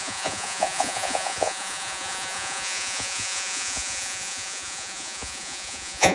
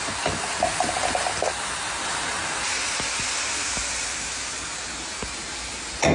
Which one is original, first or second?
second